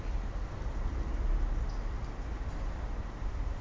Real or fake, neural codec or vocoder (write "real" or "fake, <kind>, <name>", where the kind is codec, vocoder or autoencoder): real